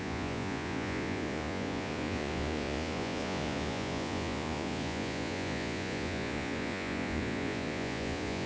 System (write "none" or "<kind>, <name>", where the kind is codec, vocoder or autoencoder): vocoder, Vocos